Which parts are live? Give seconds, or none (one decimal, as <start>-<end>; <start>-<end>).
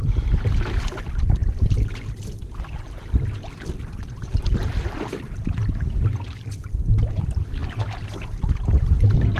0.0-9.4